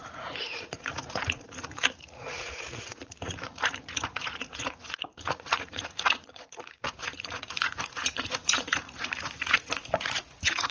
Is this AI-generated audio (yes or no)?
yes